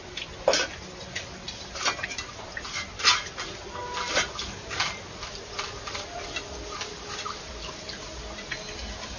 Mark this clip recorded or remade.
recorded